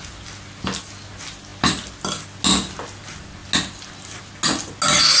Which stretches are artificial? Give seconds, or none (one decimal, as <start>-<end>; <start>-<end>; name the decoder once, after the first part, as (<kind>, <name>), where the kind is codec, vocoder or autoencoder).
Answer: none